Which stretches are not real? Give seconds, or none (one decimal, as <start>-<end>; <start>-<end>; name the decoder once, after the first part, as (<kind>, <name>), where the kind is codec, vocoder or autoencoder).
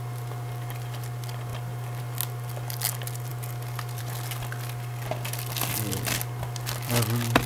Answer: none